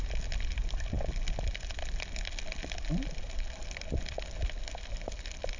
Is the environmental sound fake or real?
real